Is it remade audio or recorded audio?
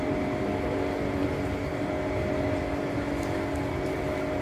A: recorded